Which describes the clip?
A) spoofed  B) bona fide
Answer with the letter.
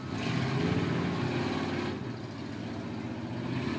B